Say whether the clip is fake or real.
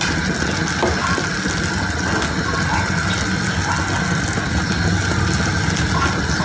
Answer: real